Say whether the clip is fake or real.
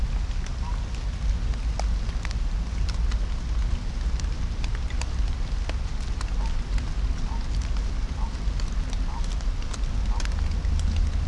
real